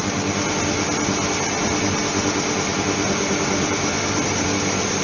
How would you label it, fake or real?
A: real